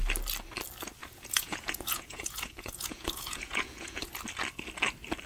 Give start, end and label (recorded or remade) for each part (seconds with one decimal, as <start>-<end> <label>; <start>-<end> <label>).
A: 0.0-1.0 recorded; 1.0-4.1 remade; 4.1-5.3 recorded